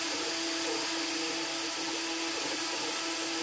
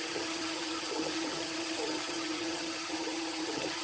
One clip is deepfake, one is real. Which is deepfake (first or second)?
second